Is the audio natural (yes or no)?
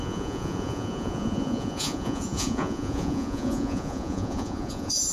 no